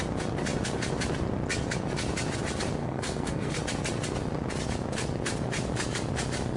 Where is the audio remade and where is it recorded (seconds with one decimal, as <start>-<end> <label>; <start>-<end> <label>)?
0.0-2.8 recorded; 2.8-3.6 remade; 3.6-6.6 recorded